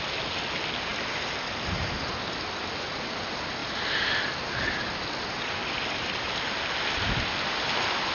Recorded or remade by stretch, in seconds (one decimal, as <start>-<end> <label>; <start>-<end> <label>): 0.0-8.1 recorded